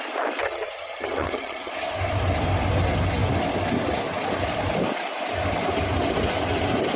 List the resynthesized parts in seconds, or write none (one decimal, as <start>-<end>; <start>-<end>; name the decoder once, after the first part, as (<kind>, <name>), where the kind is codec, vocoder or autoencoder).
0.4-1.7 (vocoder, HiFi-GAN)